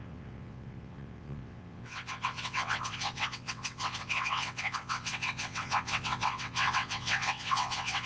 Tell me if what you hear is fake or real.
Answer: fake